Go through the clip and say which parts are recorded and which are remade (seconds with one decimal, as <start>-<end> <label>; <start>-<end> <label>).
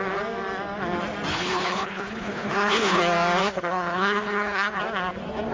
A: 0.0-1.3 recorded; 1.3-3.0 remade; 3.0-3.4 recorded; 3.4-4.8 remade; 4.8-5.5 recorded